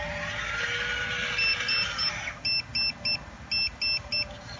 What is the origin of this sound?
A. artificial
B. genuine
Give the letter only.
B